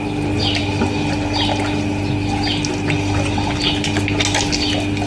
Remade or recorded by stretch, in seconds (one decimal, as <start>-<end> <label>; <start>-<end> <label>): 0.0-5.1 recorded